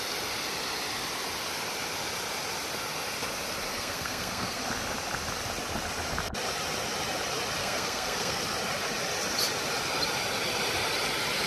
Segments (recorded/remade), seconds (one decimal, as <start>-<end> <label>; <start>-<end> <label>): 0.0-3.7 recorded; 3.7-4.6 remade; 4.6-7.6 recorded; 7.6-8.4 remade; 8.4-11.5 recorded